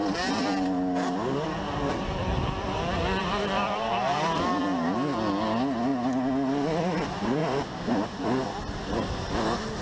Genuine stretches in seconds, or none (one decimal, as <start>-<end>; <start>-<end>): 1.6-3.2; 4.6-7.4; 8.4-9.8